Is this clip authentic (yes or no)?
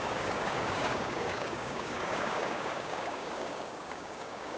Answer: no